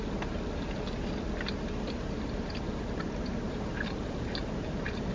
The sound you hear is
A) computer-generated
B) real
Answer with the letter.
B